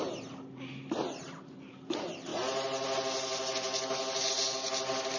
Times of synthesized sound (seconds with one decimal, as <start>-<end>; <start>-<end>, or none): none